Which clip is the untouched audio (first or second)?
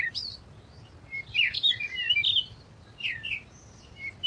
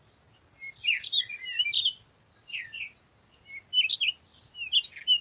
second